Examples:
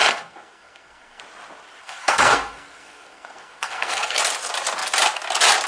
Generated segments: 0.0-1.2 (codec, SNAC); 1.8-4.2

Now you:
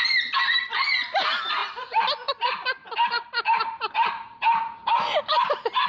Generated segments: 1.6-2.4 (vocoder, BigVGAN v2); 2.8-4.6